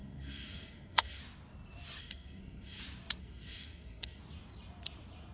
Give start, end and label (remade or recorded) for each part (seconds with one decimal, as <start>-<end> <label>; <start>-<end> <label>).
0.0-1.2 remade; 1.2-2.0 recorded; 2.0-2.8 remade; 2.8-3.2 recorded; 3.2-4.2 remade; 4.2-5.3 recorded